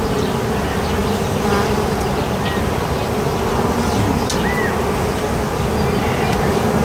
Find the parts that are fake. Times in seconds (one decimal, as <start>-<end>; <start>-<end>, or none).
none